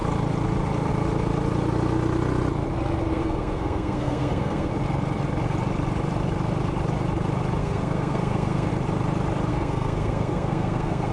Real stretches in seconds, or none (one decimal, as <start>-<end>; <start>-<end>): 0.0-3.1; 4.7-7.6; 8.7-9.5